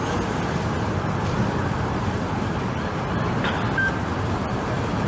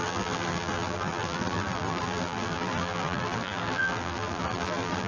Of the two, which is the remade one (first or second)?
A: second